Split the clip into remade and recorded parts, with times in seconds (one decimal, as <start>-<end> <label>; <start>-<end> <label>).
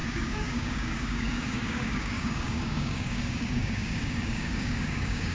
0.0-5.3 remade